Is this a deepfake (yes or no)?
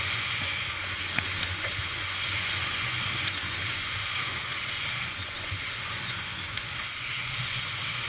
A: yes